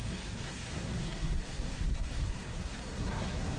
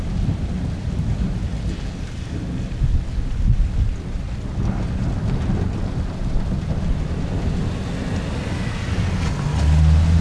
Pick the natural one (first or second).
second